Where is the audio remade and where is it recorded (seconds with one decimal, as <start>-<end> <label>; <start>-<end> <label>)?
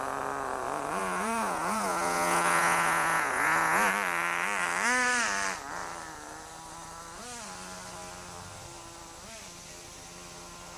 0.0-1.0 recorded; 1.0-3.9 remade; 3.9-10.8 recorded